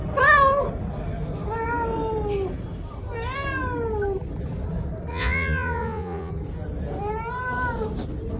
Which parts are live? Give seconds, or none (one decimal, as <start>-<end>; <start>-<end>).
0.0-5.1; 6.3-8.4